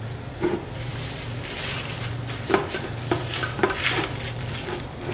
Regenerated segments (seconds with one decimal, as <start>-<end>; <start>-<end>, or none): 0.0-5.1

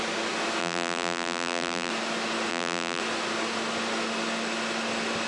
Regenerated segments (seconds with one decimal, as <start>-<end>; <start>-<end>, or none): 0.6-1.9; 2.5-3.0

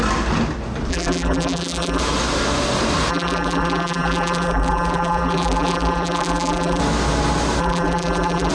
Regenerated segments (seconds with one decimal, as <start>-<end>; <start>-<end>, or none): 0.9-2.0; 3.1-6.8; 7.6-8.5

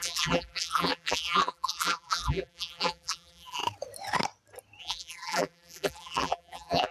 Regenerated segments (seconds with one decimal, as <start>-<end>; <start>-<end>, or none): 0.0-3.6; 4.8-6.9

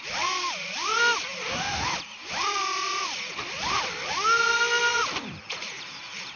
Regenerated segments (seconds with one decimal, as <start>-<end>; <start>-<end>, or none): 1.3-4.1; 4.9-5.4

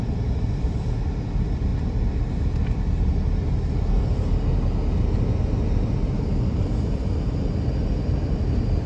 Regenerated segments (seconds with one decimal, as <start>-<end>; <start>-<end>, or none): none

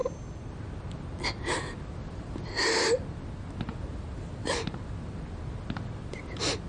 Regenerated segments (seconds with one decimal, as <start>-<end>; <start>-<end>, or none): 2.0-2.5; 3.7-6.2